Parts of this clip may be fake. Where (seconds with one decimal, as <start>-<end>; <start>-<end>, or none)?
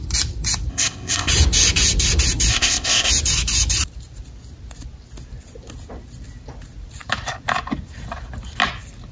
0.7-1.3; 2.5-3.1